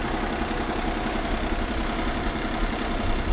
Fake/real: real